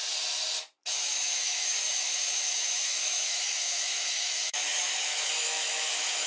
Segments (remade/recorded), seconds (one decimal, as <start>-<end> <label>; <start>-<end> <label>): 0.0-0.9 recorded; 0.9-6.3 remade